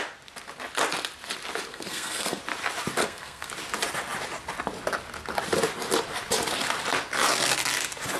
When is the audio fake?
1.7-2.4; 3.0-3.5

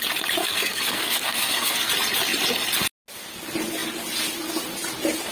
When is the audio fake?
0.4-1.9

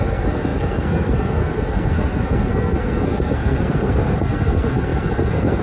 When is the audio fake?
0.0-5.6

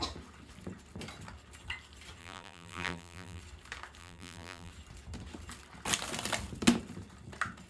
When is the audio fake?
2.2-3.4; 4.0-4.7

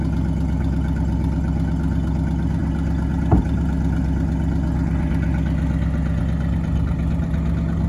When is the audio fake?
none

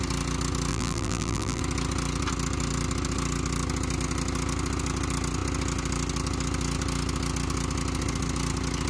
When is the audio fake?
0.7-1.6

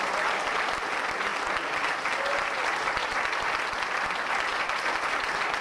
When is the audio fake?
none